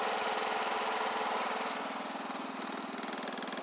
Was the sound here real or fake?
real